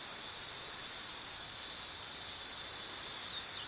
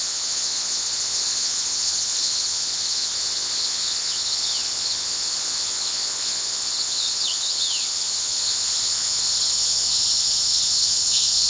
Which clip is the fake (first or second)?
second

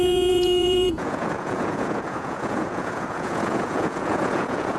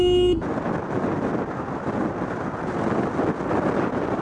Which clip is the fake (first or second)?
first